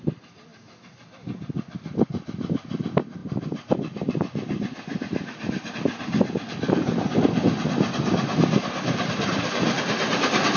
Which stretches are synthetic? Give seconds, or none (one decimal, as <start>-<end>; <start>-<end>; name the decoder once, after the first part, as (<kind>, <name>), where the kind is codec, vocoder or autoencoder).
0.0-0.5 (vocoder, BigVGAN v2); 1.8-10.6